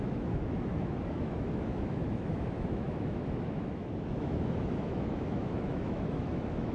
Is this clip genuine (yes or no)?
no